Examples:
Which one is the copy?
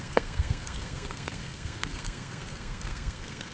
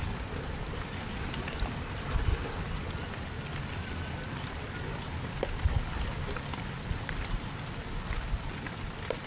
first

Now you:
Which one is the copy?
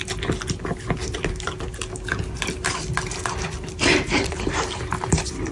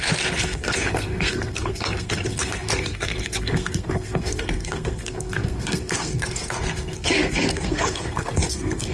second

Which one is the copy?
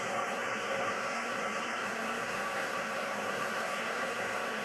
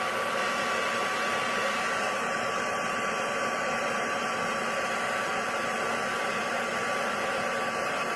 first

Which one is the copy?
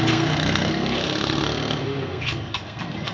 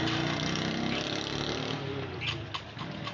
first